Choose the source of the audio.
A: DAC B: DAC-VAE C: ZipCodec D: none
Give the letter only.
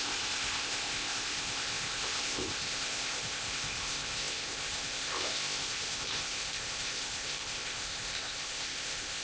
C